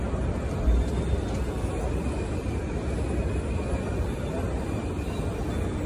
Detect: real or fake real